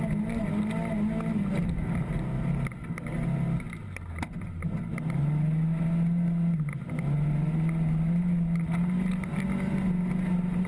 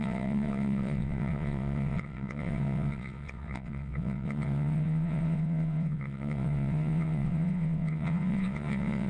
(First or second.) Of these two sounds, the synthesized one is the second